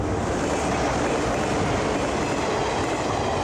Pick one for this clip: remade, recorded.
recorded